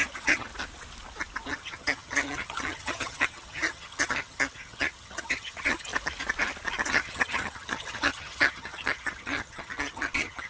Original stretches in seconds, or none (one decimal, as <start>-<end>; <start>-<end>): 0.5-1.5; 5.9-6.9